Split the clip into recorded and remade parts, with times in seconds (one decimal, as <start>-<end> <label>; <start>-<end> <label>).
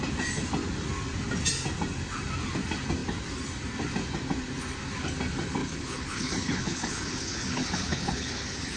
0.0-5.6 recorded; 5.6-8.8 remade